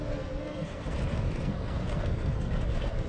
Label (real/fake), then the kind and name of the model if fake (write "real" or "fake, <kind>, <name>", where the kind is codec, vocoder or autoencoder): fake, codec, SNAC